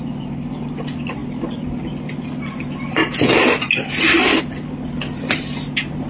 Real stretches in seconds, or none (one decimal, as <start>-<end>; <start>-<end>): 0.0-6.1